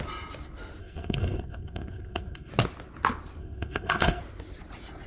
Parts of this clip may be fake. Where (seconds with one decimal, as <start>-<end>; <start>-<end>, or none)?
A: 0.8-2.5; 3.4-4.2

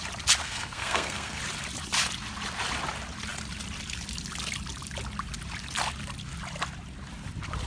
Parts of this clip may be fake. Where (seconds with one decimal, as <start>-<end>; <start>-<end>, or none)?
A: 0.4-1.4